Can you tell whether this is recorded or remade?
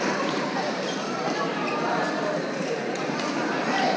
remade